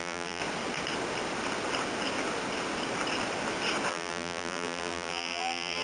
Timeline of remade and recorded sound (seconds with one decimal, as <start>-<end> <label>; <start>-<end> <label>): 0.0-0.4 remade; 0.4-3.9 recorded; 3.9-5.8 remade